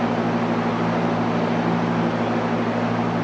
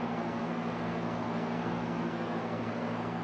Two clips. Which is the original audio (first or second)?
first